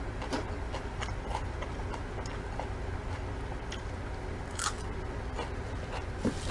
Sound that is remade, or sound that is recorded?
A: recorded